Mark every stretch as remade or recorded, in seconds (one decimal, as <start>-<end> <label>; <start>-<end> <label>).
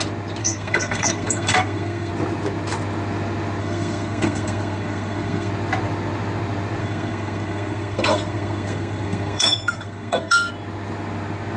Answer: 0.0-0.4 recorded; 0.4-2.1 remade; 2.1-3.6 recorded; 3.6-5.5 remade; 5.5-6.8 recorded; 6.8-10.5 remade; 10.5-11.6 recorded